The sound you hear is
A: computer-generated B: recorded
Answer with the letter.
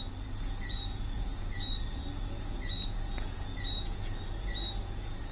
A